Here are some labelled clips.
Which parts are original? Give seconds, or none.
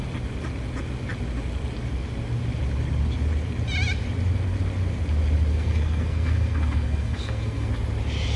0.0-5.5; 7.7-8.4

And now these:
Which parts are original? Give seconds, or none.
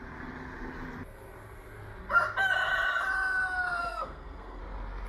0.0-3.8; 4.6-5.1